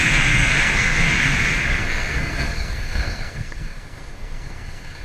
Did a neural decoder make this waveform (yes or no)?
yes